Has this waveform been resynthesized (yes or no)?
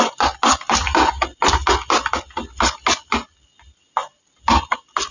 no